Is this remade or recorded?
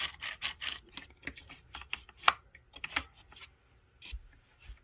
remade